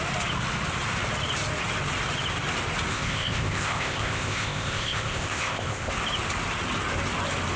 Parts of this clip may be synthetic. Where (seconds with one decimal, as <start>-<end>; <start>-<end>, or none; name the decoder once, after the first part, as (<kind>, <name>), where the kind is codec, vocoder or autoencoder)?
2.9-5.9 (codec, ZipCodec)

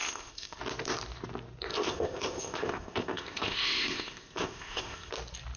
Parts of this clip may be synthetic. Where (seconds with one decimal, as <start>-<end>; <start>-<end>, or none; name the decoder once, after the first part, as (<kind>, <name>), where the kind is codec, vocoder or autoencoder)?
0.0-0.6 (codec, ZipCodec); 1.7-5.1

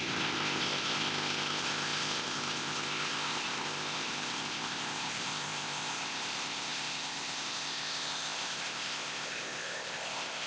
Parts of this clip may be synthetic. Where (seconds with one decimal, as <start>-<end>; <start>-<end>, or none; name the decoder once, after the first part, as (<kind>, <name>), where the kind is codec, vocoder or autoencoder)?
0.0-10.5 (codec, ZipCodec)

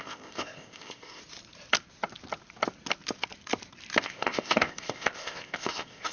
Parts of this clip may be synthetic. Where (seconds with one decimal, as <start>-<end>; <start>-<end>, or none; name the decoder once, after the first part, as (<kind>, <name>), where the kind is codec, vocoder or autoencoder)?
0.0-1.2 (codec, ZipCodec); 4.0-6.1